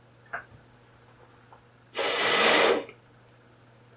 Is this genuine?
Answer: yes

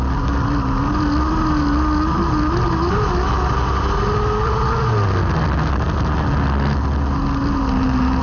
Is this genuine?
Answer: yes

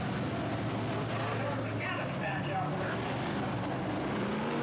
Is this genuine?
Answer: yes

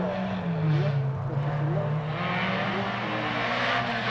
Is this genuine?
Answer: yes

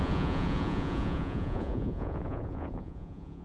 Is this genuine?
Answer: no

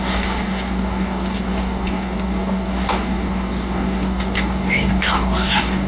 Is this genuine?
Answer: no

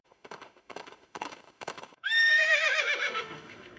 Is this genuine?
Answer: no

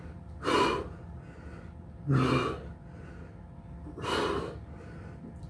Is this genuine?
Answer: yes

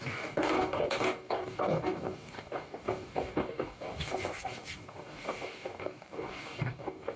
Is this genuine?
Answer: no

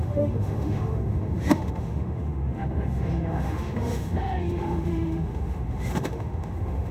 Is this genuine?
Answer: no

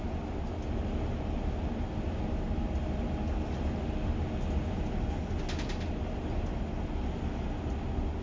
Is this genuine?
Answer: yes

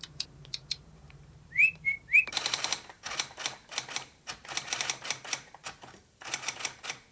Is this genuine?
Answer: no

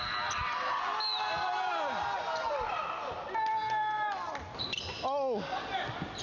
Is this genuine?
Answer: yes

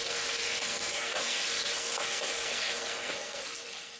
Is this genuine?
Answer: no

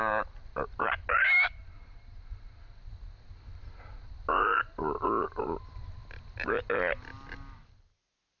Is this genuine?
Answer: yes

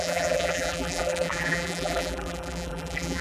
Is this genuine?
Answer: no